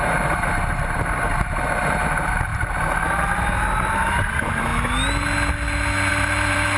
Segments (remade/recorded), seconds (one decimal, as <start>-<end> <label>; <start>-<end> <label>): 0.0-4.7 remade; 4.7-6.1 recorded; 6.1-6.8 remade